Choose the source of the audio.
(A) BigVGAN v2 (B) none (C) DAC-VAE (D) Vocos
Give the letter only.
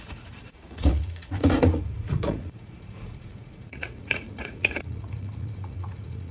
D